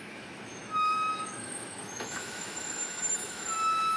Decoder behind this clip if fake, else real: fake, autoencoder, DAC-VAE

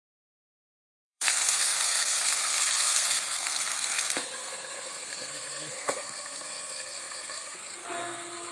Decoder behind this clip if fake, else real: fake, codec, SNAC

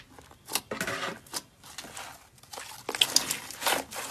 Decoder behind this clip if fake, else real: real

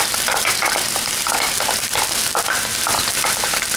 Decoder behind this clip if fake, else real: fake, vocoder, BigVGAN v2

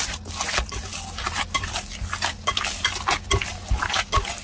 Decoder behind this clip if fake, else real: real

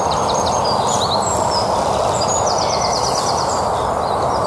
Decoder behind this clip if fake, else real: real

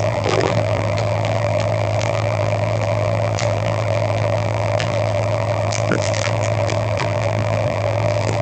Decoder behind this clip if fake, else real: fake, vocoder, BigVGAN v2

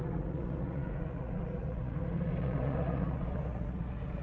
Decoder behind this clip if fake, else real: fake, vocoder, Vocos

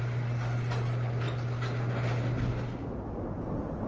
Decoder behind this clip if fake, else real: real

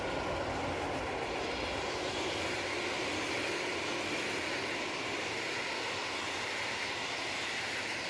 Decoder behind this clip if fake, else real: real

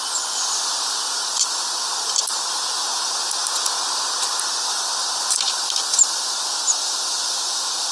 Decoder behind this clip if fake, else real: real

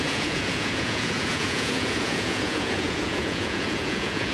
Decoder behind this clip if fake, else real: fake, vocoder, Vocos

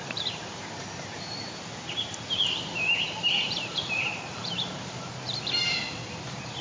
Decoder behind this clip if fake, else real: fake, vocoder, BigVGAN v2